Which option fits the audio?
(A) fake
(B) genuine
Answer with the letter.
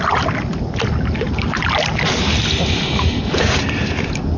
B